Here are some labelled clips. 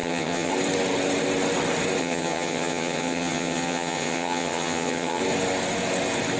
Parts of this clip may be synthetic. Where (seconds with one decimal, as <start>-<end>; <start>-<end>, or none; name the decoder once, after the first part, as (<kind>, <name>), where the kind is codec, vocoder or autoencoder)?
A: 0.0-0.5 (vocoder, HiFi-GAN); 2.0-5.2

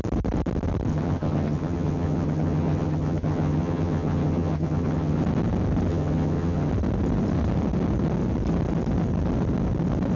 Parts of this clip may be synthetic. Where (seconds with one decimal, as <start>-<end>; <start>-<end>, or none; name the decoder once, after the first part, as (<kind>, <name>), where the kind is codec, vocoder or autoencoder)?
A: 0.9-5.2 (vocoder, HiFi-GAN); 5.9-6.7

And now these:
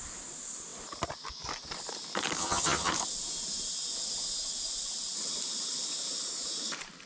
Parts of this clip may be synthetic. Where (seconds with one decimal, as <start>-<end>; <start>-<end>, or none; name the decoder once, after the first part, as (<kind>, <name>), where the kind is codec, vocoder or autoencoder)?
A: 2.4-2.9 (vocoder, HiFi-GAN)

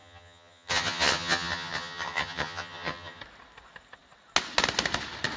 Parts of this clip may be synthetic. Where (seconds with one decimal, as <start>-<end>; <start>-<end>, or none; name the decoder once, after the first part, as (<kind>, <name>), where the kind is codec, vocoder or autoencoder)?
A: 0.0-3.2 (vocoder, HiFi-GAN)

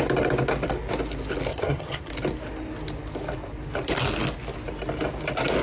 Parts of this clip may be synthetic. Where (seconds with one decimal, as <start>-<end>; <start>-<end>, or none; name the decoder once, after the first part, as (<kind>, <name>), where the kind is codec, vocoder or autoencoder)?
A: 1.5-2.1 (vocoder, HiFi-GAN)